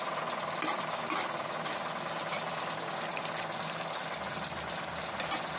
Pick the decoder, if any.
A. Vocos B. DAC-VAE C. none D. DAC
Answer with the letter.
C